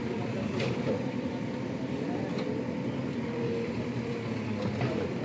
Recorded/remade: remade